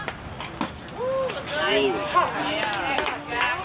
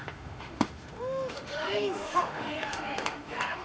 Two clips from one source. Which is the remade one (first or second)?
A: second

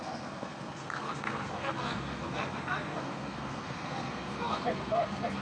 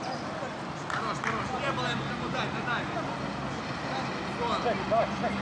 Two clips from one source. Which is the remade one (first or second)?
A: first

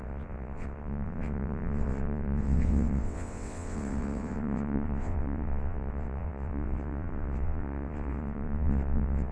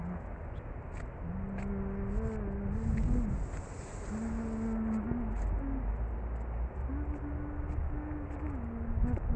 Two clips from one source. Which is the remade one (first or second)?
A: first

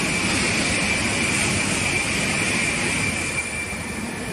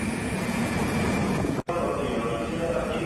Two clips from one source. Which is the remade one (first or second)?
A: second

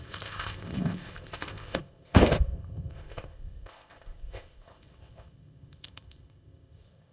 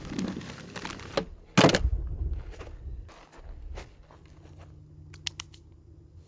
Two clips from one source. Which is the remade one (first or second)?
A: first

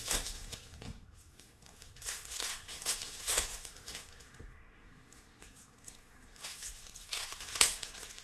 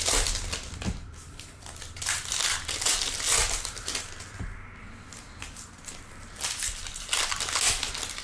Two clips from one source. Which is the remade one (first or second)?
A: first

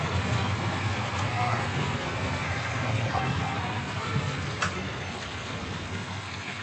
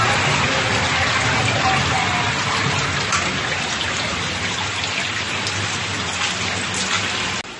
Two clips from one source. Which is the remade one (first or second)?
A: first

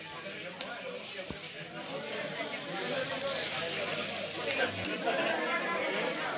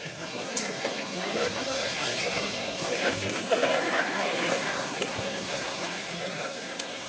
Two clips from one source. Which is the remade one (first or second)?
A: second